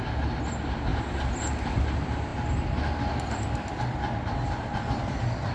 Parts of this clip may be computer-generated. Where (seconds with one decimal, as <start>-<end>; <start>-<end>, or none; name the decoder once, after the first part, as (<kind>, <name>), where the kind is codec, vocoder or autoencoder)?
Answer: 0.9-1.7 (vocoder, BigVGAN v2)